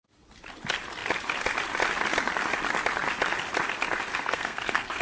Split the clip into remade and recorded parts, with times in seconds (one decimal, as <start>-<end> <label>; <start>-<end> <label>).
0.0-4.1 recorded; 4.1-5.0 remade